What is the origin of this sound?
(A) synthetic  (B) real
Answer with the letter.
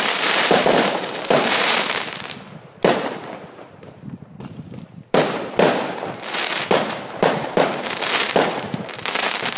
A